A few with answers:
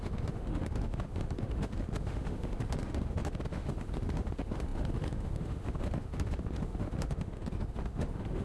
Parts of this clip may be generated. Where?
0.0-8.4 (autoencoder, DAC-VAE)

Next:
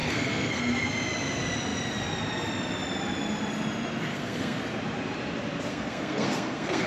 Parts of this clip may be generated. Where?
0.0-0.9 (codec, SNAC); 4.1-4.6; 5.7-6.9

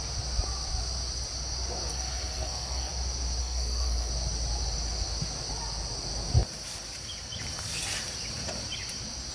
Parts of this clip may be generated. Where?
1.9-2.9 (codec, SNAC); 3.4-4.1

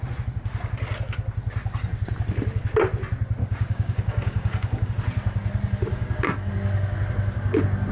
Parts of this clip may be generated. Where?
3.4-4.9 (codec, DAC); 5.9-6.5

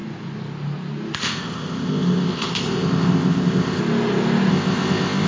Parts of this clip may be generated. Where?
1.2-3.8 (codec, ZipCodec); 4.5-5.3

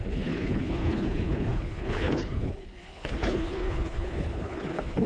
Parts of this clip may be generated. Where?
0.0-5.1 (codec, HILCodec)

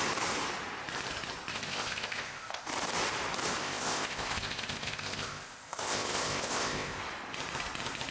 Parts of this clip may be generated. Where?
1.5-2.7 (codec, ZipCodec); 3.6-7.0